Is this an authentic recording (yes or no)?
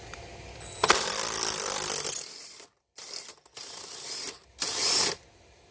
yes